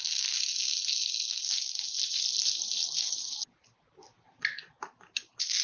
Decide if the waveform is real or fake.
real